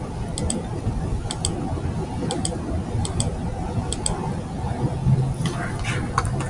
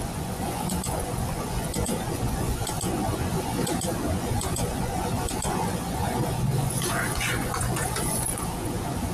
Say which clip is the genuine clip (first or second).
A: first